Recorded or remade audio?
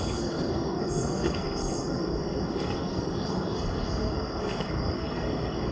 remade